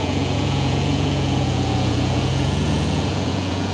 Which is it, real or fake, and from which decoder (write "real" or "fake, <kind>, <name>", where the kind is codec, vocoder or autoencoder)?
fake, vocoder, Vocos